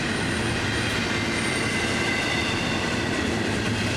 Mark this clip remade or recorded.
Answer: recorded